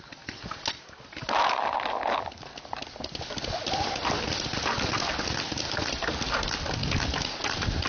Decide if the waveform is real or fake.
real